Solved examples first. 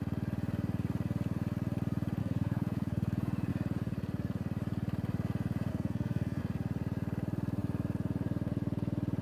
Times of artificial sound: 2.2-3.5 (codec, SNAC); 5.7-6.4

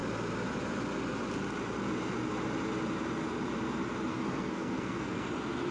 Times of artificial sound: 4.1-5.3 (codec, SNAC)

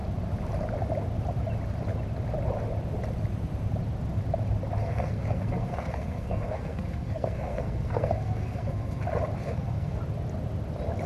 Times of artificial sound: 4.8-9.0 (codec, SNAC); 9.4-10.0

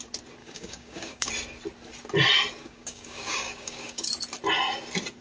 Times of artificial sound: 0.4-1.3 (codec, DAC); 2.6-4.1

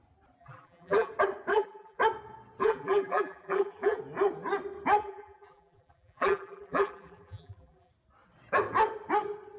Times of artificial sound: 0.4-1.1 (vocoder, BigVGAN v2); 1.5-2.0; 2.6-4.0; 5.0-7.9

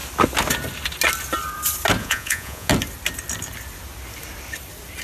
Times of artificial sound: 2.0-2.7 (vocoder, Vocos)